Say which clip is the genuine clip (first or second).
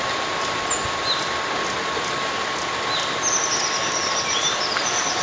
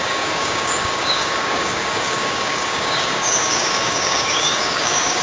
first